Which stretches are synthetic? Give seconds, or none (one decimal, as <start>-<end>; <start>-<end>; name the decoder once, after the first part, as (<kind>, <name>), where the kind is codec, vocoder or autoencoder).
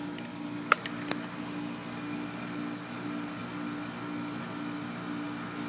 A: none